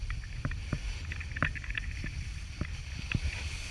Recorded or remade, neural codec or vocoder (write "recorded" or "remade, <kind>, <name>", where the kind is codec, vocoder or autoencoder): recorded